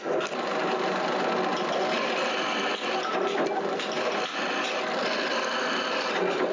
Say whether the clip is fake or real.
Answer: real